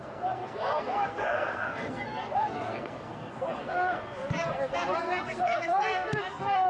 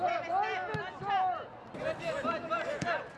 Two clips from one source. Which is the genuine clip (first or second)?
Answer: second